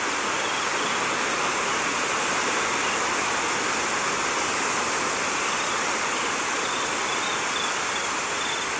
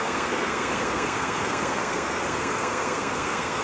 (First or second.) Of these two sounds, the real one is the first